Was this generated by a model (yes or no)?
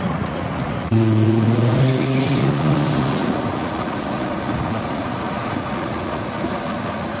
yes